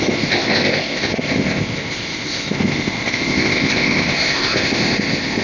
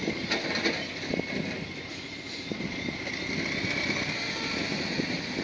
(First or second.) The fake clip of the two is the first